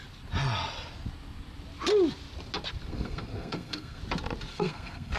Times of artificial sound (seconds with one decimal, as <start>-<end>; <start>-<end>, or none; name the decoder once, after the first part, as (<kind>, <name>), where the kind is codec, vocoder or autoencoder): 2.9-4.0 (codec, SNAC); 4.5-5.2

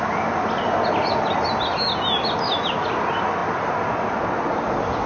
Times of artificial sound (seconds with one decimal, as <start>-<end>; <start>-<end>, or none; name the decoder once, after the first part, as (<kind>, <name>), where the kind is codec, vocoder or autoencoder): none